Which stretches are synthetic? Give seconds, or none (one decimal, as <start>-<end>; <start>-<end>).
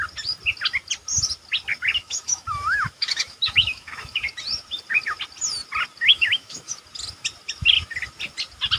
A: 2.0-4.2; 6.1-6.7